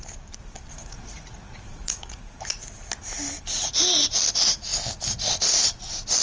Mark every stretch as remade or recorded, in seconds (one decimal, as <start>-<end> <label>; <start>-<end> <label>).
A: 0.0-0.7 recorded; 0.7-2.2 remade; 2.2-6.2 recorded